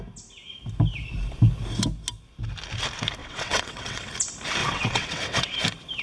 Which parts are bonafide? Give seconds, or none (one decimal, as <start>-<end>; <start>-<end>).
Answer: 0.0-3.2; 4.1-4.6; 5.6-6.0